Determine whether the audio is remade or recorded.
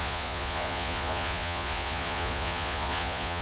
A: remade